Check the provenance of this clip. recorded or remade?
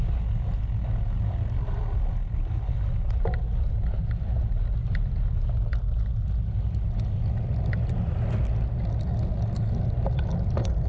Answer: recorded